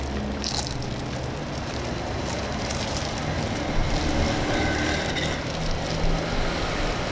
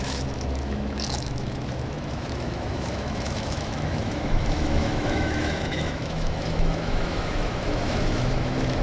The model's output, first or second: second